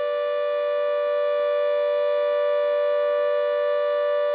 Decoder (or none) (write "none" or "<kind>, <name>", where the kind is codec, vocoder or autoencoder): none